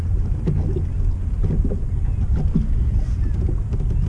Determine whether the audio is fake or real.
real